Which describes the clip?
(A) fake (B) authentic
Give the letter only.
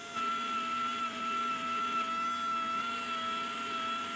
B